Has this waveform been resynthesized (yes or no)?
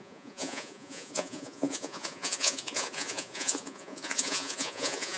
yes